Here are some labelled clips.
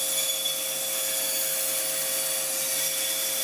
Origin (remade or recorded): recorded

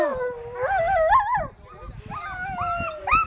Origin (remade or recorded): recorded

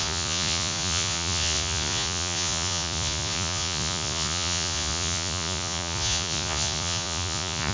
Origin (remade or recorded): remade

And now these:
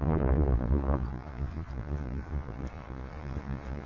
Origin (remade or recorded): remade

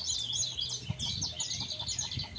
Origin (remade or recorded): recorded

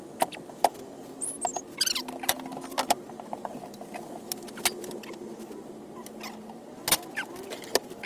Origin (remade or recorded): recorded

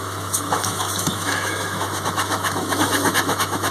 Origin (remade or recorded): remade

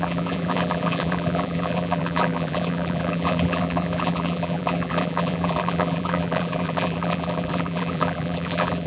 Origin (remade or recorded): remade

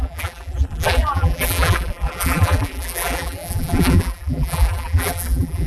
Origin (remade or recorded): remade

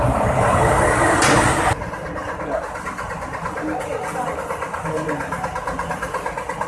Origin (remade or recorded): recorded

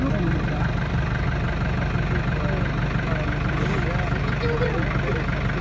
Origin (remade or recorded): recorded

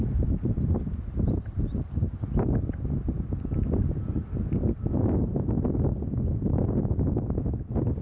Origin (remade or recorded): recorded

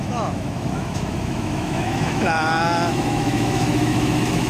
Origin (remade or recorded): remade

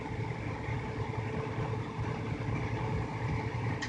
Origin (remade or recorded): recorded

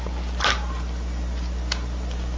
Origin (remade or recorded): recorded